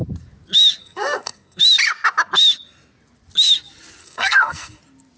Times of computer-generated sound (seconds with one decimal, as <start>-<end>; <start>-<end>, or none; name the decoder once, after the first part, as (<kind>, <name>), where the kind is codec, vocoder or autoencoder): 0.8-1.6 (codec, SNAC); 4.0-4.8